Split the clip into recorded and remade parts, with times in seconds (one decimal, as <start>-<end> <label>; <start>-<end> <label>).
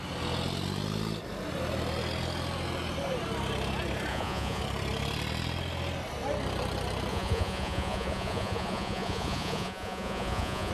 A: 0.0-4.1 recorded; 4.1-4.6 remade; 4.6-7.1 recorded; 7.1-10.7 remade